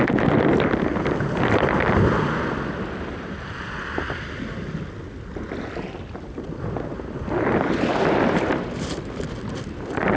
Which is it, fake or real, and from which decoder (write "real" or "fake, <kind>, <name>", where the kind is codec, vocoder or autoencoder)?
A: real